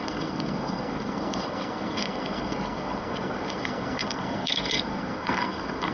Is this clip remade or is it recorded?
remade